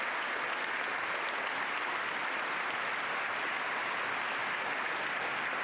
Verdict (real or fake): real